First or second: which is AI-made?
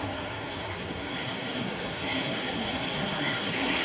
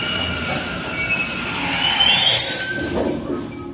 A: first